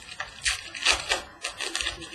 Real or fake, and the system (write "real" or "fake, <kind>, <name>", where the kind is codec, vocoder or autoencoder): real